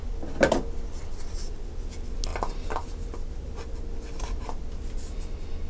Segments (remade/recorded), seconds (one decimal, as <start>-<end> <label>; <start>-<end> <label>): 0.0-5.7 recorded